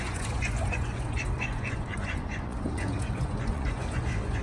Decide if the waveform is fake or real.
fake